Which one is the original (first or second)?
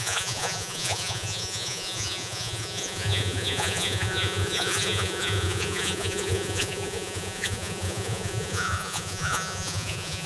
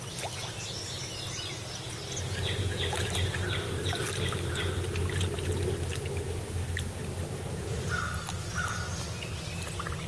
second